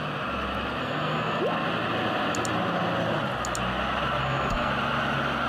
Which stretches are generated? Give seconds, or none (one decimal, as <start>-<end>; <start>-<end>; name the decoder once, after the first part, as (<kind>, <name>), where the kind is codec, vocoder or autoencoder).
0.8-1.4 (codec, SNAC); 4.2-4.7